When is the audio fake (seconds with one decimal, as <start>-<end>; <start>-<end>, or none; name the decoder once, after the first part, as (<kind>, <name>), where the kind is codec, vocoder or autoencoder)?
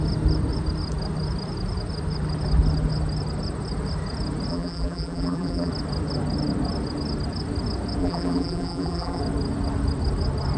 4.5-5.7 (vocoder, BigVGAN v2); 8.0-9.2